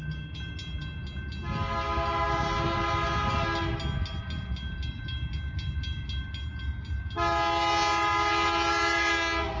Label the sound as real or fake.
real